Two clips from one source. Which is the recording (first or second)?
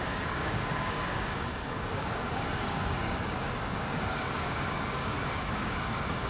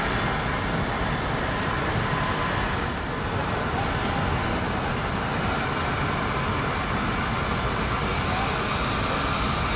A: second